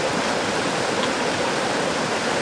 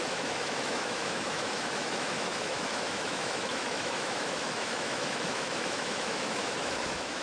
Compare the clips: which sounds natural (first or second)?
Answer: first